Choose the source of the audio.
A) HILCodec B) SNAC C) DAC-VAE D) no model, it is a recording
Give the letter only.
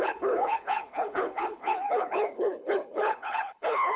A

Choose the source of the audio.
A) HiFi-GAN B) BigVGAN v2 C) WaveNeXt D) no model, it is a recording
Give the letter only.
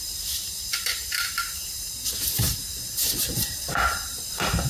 B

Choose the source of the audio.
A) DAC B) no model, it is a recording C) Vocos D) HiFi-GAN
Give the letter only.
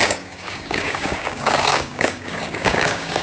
A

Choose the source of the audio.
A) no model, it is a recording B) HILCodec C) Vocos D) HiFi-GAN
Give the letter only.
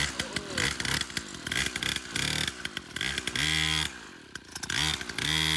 A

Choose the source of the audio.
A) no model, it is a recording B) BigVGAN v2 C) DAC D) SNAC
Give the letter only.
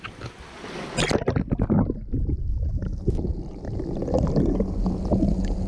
A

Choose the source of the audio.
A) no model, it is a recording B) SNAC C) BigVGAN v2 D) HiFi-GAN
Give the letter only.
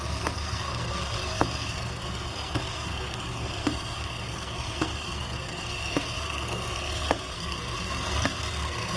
B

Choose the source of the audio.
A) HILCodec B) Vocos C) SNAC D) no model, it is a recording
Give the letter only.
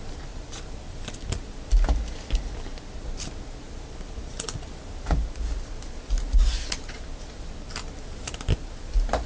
D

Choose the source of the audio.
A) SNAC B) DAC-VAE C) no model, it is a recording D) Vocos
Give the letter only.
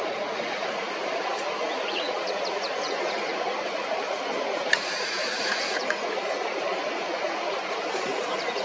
D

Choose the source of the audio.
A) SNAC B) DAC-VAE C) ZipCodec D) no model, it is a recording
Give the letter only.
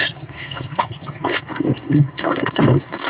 A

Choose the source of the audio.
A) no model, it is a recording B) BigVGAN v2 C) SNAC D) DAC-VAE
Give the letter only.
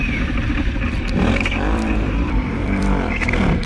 B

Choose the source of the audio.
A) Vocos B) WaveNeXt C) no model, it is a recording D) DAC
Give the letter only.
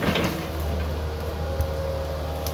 C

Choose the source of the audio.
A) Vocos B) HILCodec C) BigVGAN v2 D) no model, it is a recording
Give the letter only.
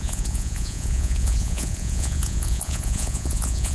A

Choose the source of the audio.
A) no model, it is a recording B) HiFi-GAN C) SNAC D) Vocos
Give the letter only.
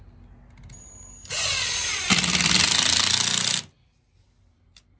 A